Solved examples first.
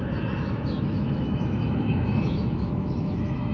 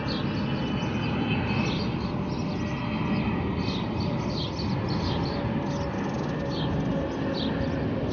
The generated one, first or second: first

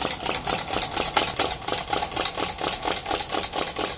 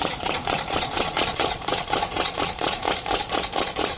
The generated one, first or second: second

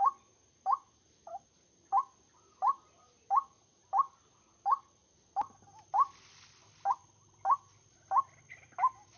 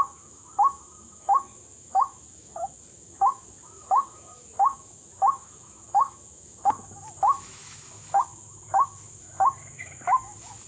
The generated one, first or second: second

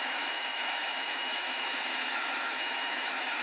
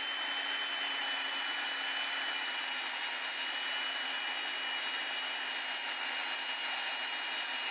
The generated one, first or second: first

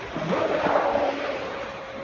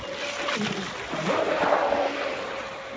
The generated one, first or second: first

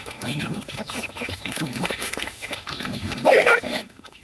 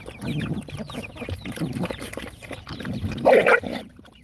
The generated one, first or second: first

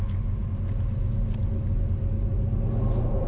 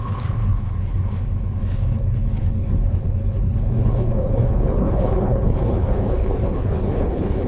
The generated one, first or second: second